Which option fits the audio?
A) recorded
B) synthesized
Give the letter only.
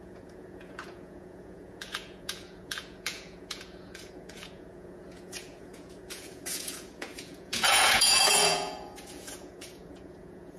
B